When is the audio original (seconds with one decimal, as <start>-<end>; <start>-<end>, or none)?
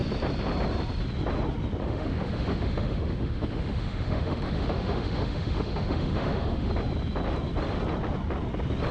0.0-1.8; 6.7-8.9